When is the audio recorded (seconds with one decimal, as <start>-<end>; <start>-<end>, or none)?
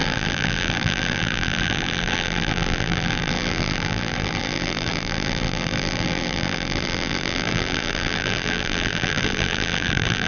none